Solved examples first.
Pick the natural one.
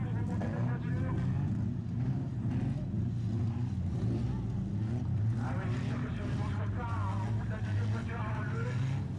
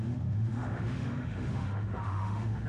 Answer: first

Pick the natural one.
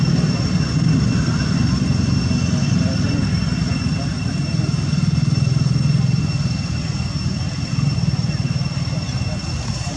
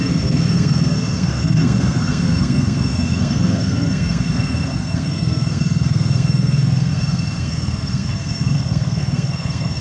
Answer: first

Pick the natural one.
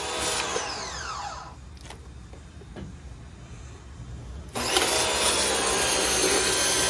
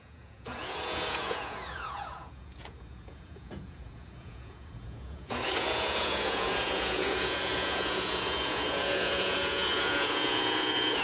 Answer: first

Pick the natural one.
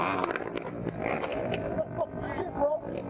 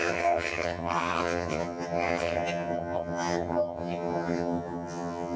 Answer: first